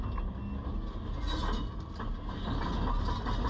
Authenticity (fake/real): real